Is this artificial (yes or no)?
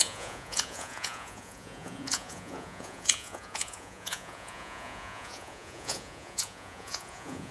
yes